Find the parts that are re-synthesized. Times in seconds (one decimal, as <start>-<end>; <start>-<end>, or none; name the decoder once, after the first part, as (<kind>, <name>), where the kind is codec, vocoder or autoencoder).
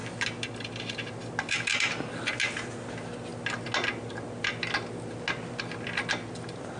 none